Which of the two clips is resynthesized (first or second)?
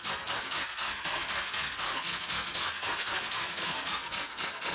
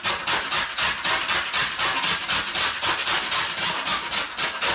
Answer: first